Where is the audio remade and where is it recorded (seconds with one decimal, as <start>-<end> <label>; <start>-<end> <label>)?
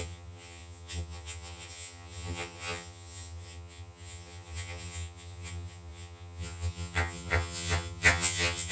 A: 0.0-8.7 remade